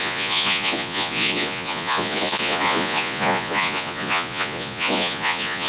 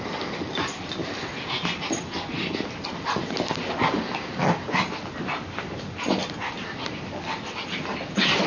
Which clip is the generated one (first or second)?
first